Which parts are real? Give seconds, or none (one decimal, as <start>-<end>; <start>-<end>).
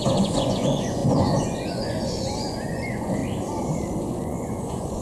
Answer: 3.2-4.0